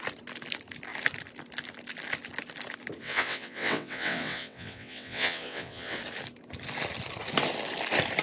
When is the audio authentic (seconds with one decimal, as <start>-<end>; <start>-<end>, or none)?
0.0-3.0; 6.0-8.2